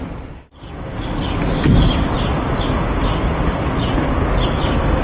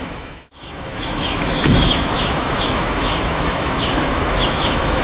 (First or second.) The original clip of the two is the first